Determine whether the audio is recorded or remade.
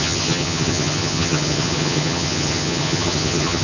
remade